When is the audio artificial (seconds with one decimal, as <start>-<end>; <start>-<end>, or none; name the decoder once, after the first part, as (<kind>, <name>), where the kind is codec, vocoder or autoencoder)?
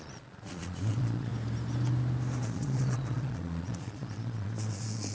0.0-1.3 (vocoder, Vocos); 2.4-5.1